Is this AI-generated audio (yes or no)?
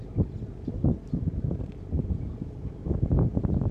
no